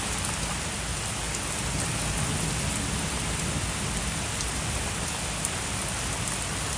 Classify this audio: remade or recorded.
recorded